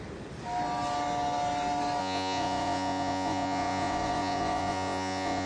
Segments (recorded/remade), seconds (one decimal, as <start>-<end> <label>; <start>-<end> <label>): 0.0-2.0 recorded; 2.0-5.5 remade